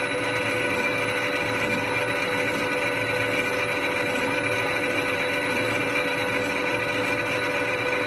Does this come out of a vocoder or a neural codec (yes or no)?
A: no